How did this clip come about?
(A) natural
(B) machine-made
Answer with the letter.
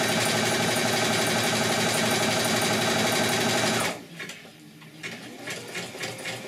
A